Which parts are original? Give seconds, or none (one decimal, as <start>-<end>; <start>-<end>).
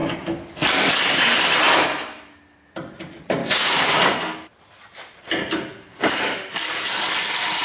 0.0-3.4; 4.0-7.6